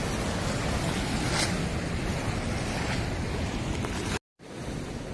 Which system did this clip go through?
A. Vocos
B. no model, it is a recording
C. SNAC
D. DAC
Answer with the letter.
B